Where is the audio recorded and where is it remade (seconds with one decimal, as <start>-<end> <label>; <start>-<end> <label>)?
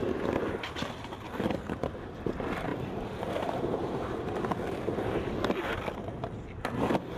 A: 0.0-2.7 recorded; 2.7-4.2 remade; 4.2-7.2 recorded